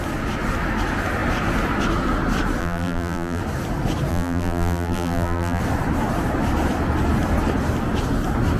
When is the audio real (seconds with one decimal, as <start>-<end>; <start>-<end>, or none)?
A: 0.0-2.6; 3.4-4.1; 5.6-8.6

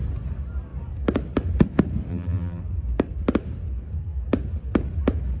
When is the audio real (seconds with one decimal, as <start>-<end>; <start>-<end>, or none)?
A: 0.0-2.1; 2.6-5.4

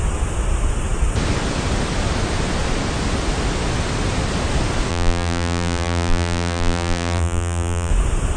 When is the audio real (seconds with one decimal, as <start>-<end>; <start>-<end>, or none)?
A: 0.0-4.9; 7.9-8.4